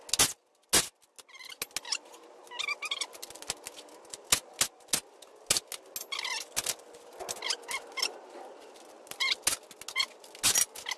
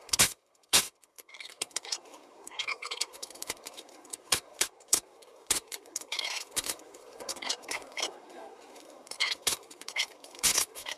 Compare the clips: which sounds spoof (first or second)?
second